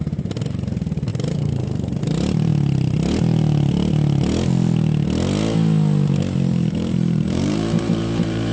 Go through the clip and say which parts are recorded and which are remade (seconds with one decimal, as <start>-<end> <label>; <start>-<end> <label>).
0.0-2.5 remade; 2.5-6.5 recorded; 6.5-8.5 remade